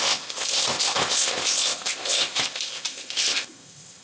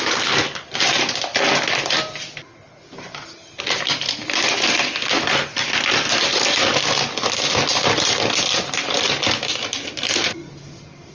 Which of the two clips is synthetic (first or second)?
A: first